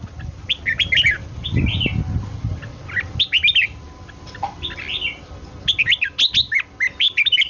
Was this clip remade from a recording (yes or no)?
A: no